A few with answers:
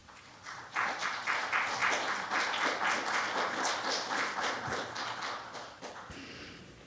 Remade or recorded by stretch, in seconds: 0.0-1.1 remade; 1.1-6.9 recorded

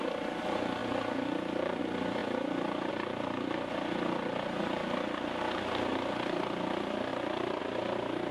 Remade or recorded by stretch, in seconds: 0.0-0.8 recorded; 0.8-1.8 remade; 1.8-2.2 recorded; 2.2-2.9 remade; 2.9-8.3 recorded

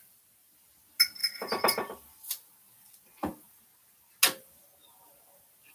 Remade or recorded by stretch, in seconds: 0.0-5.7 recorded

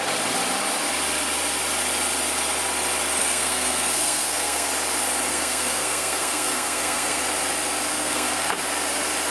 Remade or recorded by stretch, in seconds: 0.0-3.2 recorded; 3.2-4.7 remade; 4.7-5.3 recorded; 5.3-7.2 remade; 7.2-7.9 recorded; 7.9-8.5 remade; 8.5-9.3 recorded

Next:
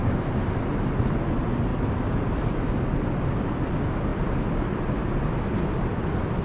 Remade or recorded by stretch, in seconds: 0.0-0.6 remade; 0.6-1.7 recorded; 1.7-2.9 remade; 2.9-6.4 recorded

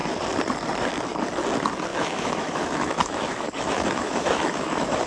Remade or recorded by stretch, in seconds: 0.0-1.9 recorded; 1.9-5.1 remade

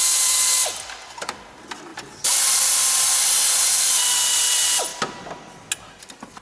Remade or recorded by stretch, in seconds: 0.0-4.9 remade; 4.9-6.0 recorded; 6.0-6.4 remade